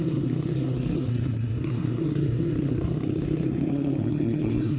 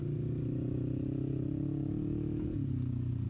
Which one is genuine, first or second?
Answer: second